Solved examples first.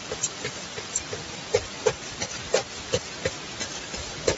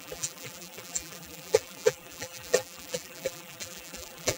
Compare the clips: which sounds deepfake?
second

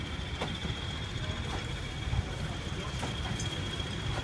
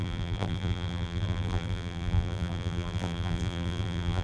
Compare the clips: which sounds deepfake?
second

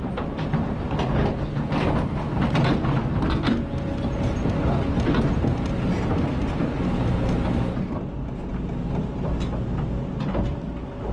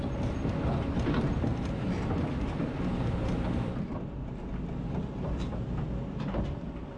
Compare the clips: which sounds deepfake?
second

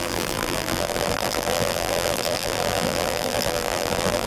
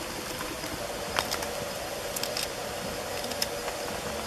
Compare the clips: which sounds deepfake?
first